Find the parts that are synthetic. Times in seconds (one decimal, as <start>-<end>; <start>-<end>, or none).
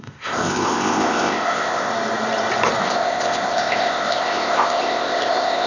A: 0.0-1.9; 2.8-5.7